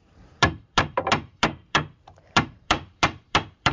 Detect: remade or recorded remade